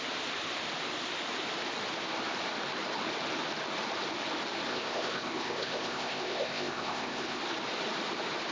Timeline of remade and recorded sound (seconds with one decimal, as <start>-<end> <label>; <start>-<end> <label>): 0.0-4.7 recorded; 4.7-7.4 remade; 7.4-8.5 recorded